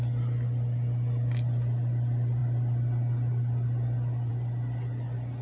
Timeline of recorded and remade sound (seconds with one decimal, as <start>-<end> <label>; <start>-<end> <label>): 0.0-5.4 recorded